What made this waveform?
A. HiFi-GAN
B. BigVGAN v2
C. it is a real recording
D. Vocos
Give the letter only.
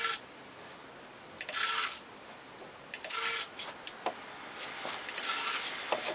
C